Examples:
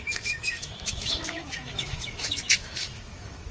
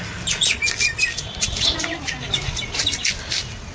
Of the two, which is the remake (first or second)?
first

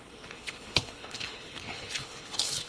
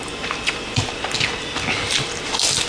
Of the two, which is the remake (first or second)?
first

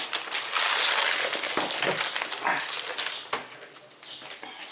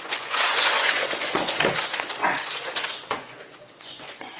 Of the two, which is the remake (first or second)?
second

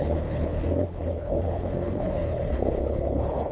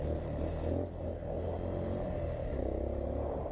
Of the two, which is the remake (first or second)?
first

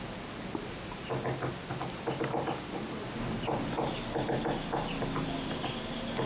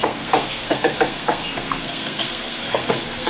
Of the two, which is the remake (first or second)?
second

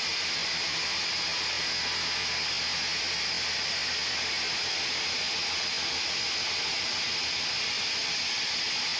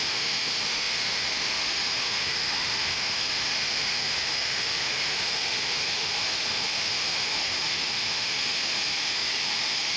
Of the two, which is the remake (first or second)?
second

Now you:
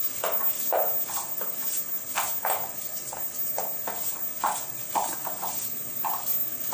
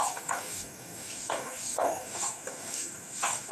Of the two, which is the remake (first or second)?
second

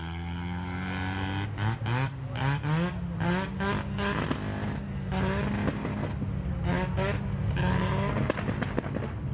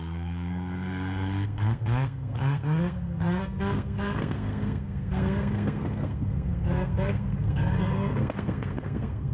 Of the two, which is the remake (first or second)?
second